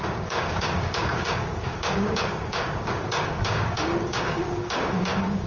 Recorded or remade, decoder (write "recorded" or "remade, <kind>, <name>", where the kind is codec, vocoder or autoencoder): remade, codec, DAC